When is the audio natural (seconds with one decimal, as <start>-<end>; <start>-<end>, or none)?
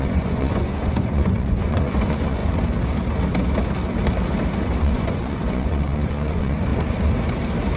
2.4-4.8; 6.7-7.8